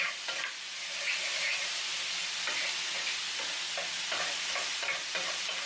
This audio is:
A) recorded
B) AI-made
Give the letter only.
A